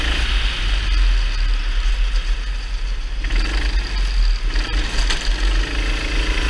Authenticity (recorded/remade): recorded